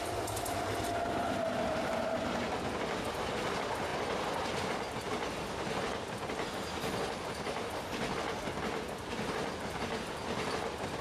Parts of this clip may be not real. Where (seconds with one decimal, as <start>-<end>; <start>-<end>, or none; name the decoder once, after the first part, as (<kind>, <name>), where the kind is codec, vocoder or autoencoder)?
none